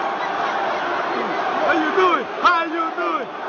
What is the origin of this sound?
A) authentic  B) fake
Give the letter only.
A